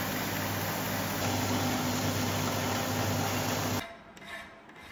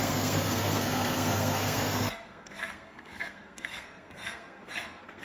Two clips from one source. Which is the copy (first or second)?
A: second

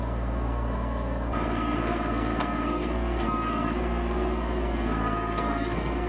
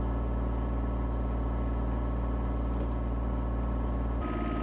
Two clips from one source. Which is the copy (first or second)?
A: first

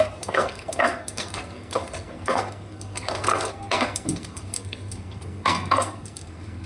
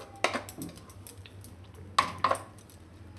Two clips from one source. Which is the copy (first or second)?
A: first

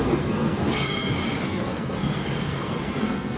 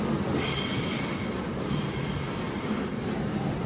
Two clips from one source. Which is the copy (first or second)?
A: first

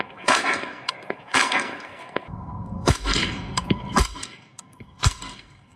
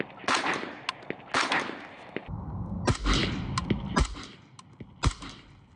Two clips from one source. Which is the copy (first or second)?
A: first